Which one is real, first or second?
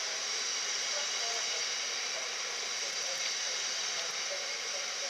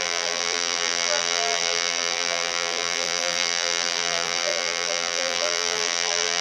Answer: first